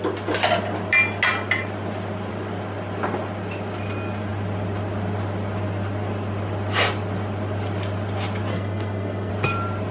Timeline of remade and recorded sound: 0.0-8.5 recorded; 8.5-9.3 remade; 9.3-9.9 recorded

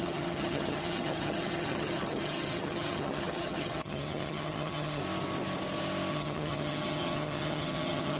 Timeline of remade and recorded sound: 0.0-5.0 remade; 5.0-6.1 recorded; 6.1-8.2 remade

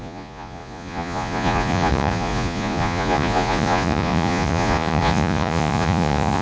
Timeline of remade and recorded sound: 0.0-6.4 remade

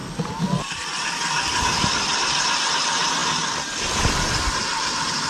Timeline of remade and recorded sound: 0.0-0.6 recorded; 0.6-5.3 remade

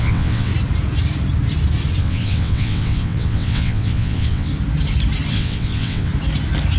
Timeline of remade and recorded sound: 0.0-0.5 remade; 0.5-2.0 recorded; 2.0-4.5 remade; 4.5-5.3 recorded; 5.3-6.1 remade; 6.1-6.8 recorded

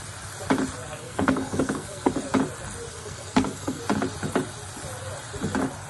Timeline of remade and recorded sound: 0.0-1.0 recorded; 1.0-2.1 remade; 2.1-2.9 recorded; 2.9-3.8 remade; 3.8-5.9 recorded